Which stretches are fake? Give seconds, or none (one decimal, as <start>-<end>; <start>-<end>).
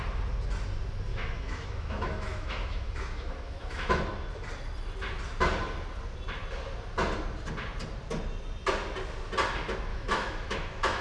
1.1-4.0; 9.9-11.0